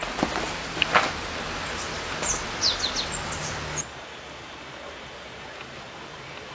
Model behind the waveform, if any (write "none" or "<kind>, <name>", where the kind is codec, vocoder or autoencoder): none